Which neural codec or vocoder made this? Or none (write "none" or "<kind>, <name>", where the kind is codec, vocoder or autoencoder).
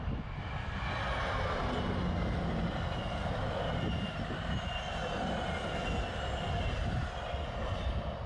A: none